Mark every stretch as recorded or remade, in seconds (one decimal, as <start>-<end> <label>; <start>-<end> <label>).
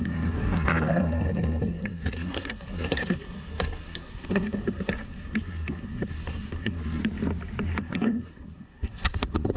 0.0-7.0 remade; 7.0-7.8 recorded; 7.8-9.6 remade